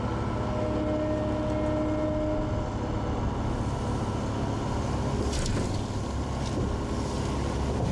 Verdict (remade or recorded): recorded